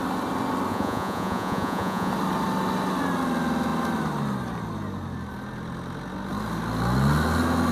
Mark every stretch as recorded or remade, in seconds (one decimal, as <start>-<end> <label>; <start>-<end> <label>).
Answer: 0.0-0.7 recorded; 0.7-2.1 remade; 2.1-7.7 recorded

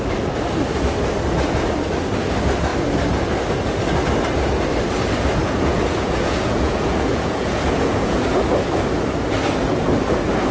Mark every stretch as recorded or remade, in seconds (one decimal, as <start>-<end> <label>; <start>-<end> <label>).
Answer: 0.0-5.4 recorded; 5.4-8.4 remade; 8.4-10.5 recorded

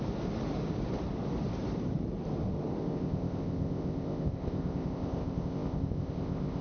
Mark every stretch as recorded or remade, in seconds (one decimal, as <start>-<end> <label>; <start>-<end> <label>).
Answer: 0.0-2.8 recorded; 2.8-6.6 remade

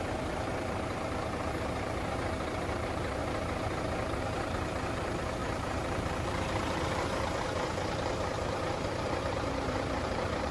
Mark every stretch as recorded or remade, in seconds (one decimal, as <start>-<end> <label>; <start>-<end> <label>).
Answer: 0.0-3.2 remade; 3.2-4.2 recorded; 4.2-10.5 remade

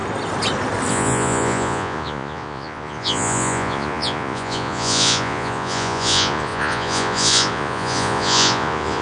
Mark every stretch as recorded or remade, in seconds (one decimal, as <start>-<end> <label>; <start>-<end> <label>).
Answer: 0.0-0.9 recorded; 0.9-9.0 remade

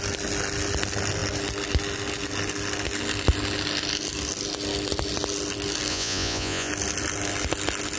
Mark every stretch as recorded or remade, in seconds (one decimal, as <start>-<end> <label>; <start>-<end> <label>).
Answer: 0.0-5.9 recorded; 5.9-6.7 remade; 6.7-8.0 recorded

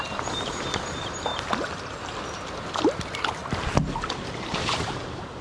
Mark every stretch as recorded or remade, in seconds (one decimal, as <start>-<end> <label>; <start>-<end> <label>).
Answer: 0.0-1.3 remade; 1.3-2.8 recorded; 2.8-3.4 remade; 3.4-4.4 recorded; 4.4-5.4 remade

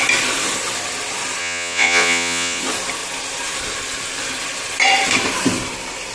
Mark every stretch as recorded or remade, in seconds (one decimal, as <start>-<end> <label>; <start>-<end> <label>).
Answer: 0.0-1.4 recorded; 1.4-2.6 remade; 2.6-6.1 recorded